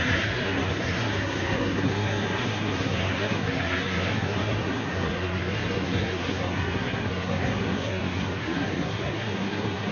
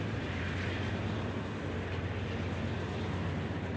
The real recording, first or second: second